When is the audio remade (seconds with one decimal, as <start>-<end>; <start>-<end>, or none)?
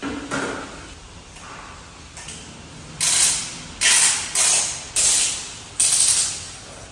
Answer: none